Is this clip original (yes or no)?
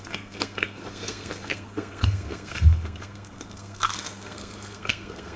no